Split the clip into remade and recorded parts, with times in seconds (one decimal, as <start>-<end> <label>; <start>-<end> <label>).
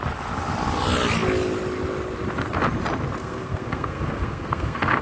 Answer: 0.0-3.2 recorded; 3.2-5.0 remade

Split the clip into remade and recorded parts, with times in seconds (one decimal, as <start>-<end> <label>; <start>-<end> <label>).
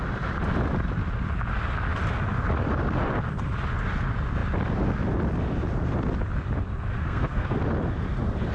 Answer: 0.0-7.0 recorded; 7.0-7.6 remade; 7.6-8.5 recorded